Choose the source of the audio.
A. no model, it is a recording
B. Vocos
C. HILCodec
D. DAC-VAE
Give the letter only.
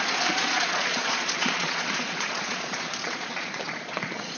B